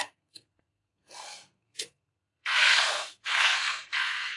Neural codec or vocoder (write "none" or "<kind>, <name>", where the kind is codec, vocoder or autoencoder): codec, SNAC